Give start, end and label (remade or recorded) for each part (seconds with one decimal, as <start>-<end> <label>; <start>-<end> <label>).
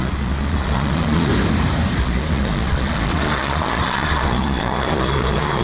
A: 0.0-1.3 remade; 1.3-2.0 recorded; 2.0-5.6 remade